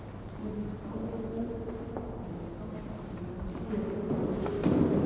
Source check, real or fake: real